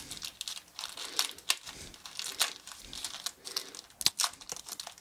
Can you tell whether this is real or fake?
real